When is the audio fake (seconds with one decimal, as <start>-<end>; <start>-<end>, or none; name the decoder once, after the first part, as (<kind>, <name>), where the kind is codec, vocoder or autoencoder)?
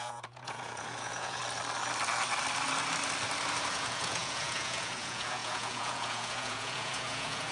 0.0-1.4 (vocoder, Vocos); 3.7-7.5